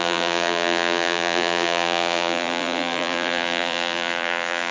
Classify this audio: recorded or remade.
remade